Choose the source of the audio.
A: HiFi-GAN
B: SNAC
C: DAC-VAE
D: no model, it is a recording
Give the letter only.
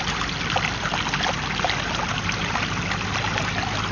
D